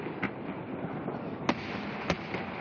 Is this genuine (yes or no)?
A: yes